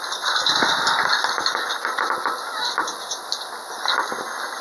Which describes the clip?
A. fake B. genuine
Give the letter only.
B